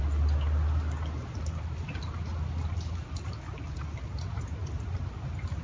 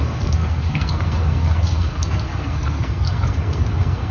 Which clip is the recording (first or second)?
first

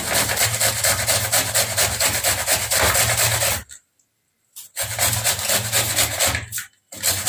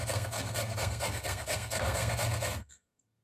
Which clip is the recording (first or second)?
first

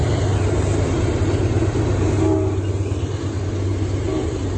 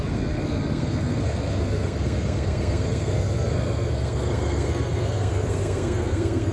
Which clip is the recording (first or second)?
first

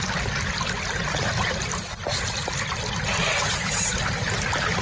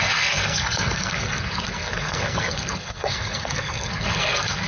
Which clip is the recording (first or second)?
first